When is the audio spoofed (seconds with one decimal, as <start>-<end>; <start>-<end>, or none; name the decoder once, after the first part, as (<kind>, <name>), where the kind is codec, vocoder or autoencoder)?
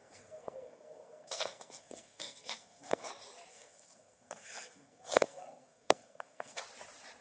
0.0-3.1 (codec, SNAC); 3.5-6.6